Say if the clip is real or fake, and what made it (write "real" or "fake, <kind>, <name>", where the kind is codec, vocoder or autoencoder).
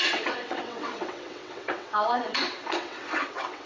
fake, vocoder, WaveNeXt